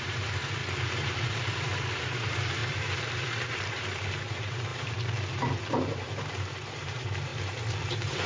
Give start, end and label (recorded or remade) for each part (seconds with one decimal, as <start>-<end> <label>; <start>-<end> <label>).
0.0-0.6 remade; 0.6-1.2 recorded; 1.2-7.3 remade; 7.3-7.8 recorded; 7.8-8.3 remade

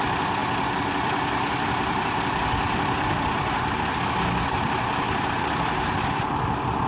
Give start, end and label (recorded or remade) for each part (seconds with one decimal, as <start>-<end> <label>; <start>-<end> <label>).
0.0-6.9 remade

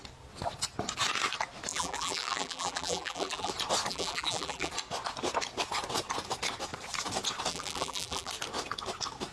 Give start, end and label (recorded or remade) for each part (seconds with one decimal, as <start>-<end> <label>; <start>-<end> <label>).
0.0-1.7 recorded; 1.7-3.5 remade; 3.5-3.9 recorded; 3.9-4.7 remade; 4.7-7.5 recorded; 7.5-8.3 remade; 8.3-9.3 recorded

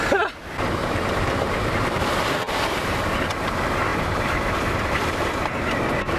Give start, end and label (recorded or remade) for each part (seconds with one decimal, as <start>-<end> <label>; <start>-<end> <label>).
0.0-0.8 recorded; 0.8-2.8 remade; 2.8-3.9 recorded; 3.9-5.3 remade; 5.3-6.2 recorded